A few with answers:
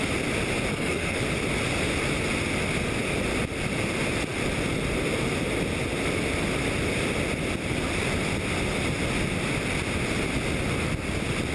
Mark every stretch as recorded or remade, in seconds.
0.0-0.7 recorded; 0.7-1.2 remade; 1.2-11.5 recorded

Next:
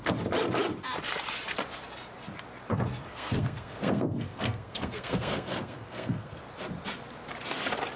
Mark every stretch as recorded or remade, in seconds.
0.0-2.7 recorded; 2.7-6.4 remade; 6.4-8.0 recorded

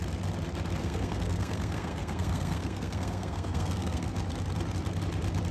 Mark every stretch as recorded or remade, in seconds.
0.0-0.8 recorded; 0.8-4.1 remade; 4.1-5.5 recorded